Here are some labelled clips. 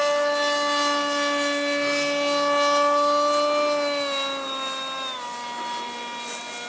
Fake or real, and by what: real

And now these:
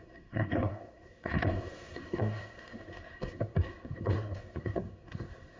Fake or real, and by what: fake, codec, SNAC